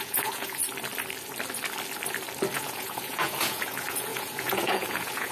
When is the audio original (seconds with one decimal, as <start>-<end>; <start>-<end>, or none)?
0.6-2.5